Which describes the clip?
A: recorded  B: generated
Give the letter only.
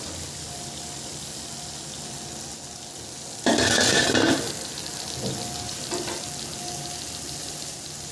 A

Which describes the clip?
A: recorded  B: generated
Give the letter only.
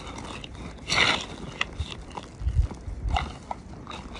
A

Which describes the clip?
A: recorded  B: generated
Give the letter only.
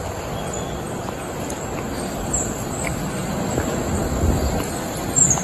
A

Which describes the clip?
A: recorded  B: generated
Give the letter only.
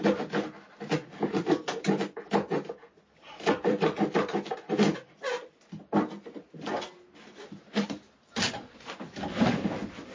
A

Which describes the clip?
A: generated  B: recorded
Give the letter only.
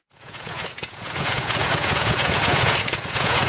A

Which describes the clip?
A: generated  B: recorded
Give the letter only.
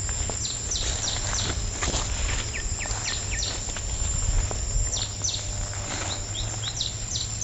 B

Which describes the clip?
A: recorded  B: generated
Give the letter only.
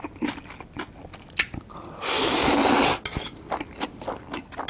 A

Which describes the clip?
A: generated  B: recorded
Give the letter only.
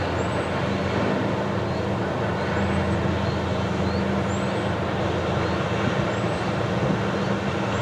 B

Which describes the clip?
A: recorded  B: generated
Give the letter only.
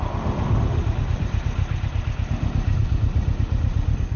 A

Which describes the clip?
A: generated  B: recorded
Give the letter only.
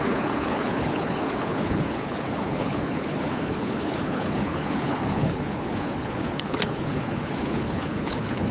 A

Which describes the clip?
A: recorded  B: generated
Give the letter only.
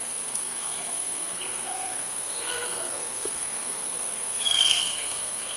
B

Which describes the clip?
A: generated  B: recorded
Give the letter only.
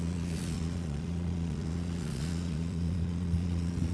A